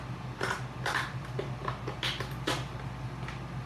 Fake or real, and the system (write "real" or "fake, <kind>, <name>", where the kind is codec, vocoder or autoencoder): real